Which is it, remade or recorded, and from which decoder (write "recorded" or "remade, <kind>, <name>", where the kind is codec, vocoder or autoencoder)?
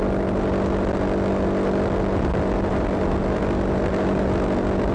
recorded